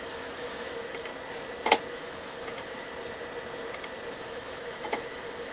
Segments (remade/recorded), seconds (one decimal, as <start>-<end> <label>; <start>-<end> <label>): 0.0-1.1 remade; 1.1-1.9 recorded; 1.9-2.9 remade; 2.9-4.2 recorded; 4.2-5.5 remade